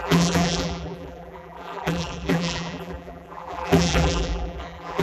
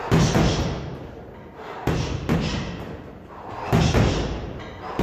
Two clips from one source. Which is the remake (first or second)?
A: first